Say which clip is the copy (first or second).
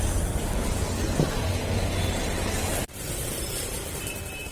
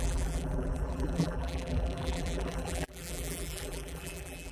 second